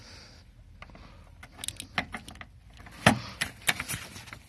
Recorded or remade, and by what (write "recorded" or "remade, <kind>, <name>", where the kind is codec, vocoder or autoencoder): recorded